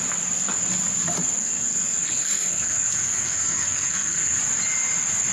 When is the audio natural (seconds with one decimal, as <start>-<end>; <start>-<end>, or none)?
0.0-1.4; 4.4-5.3